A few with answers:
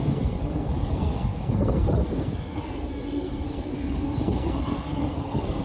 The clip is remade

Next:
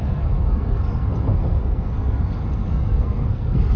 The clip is remade